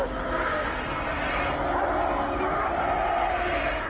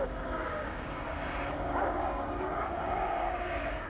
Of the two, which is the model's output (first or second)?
second